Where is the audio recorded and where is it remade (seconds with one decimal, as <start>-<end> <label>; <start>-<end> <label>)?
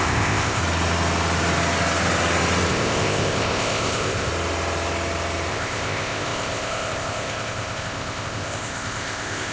0.0-0.6 remade; 0.6-2.7 recorded; 2.7-4.3 remade; 4.3-5.5 recorded; 5.5-9.5 remade